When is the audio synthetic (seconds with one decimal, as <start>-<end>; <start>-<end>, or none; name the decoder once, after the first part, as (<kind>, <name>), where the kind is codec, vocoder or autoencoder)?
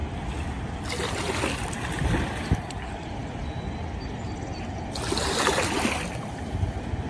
none